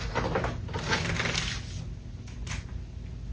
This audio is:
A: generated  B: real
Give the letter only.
B